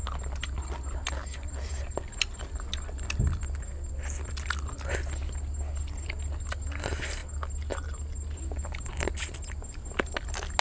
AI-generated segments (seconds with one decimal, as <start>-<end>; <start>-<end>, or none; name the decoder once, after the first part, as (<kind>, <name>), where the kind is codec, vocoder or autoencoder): none